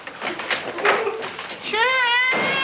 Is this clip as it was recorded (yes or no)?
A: yes